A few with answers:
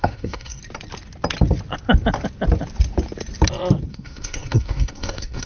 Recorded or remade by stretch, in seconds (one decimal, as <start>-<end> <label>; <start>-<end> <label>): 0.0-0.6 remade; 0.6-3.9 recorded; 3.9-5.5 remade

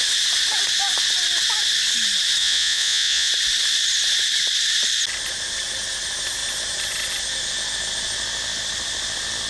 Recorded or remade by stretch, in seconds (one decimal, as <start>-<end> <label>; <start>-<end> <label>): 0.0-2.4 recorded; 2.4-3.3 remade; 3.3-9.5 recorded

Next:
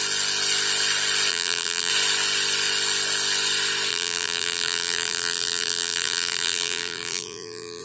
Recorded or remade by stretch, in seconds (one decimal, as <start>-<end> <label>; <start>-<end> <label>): 0.0-1.3 recorded; 1.3-1.9 remade; 1.9-3.9 recorded; 3.9-7.8 remade

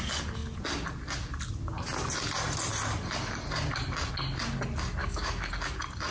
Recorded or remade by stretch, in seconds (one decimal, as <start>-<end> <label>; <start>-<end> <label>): 0.0-5.0 recorded; 5.0-5.5 remade; 5.5-6.1 recorded

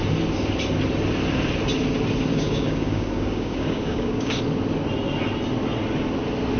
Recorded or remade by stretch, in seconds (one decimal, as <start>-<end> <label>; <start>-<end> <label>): 0.0-2.3 recorded; 2.3-4.4 remade; 4.4-6.6 recorded

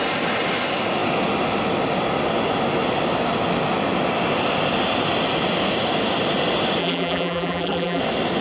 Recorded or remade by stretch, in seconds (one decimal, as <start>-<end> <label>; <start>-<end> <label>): 0.0-6.8 recorded; 6.8-8.0 remade; 8.0-8.4 recorded